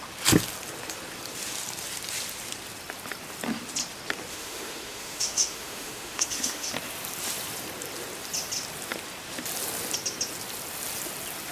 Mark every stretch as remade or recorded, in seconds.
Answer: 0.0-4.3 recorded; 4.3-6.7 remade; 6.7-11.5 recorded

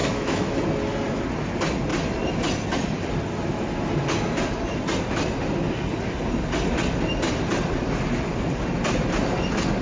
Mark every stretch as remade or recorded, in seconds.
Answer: 0.0-0.6 remade; 0.6-9.8 recorded

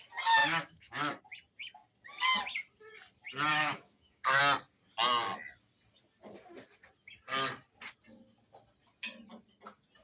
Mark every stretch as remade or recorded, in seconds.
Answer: 0.0-0.4 recorded; 0.4-1.2 remade; 1.2-3.5 recorded; 3.5-4.4 remade; 4.4-10.0 recorded